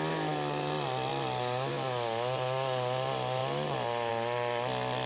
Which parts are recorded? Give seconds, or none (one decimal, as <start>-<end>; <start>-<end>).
0.0-5.1